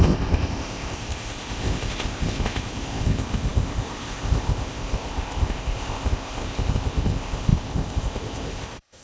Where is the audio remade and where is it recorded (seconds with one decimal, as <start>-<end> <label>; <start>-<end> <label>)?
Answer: 0.0-9.0 remade